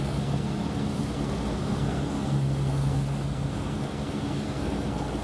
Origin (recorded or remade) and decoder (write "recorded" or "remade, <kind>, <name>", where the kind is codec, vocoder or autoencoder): remade, codec, SNAC